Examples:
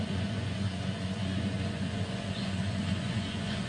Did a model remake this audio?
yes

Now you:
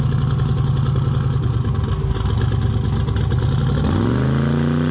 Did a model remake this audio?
no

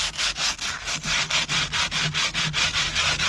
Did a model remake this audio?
no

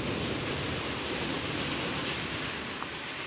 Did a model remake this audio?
no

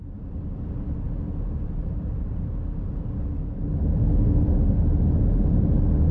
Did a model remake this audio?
no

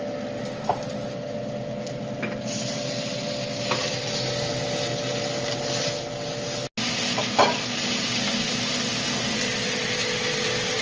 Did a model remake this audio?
no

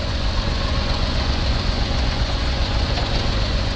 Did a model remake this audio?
yes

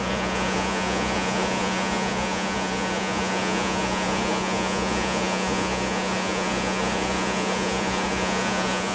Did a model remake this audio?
yes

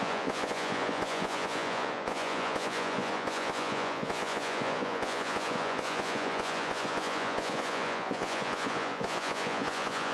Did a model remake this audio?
yes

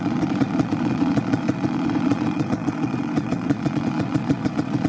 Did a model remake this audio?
yes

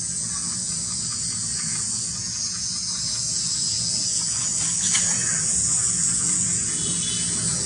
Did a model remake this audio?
yes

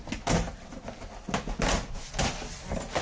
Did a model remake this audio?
no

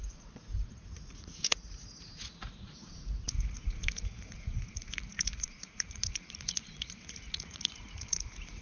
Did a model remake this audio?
yes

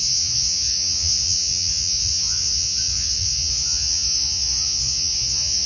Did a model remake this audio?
yes